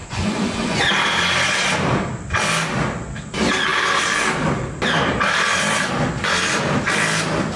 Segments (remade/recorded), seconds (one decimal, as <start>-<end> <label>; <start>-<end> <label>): 0.0-0.8 remade; 0.8-7.6 recorded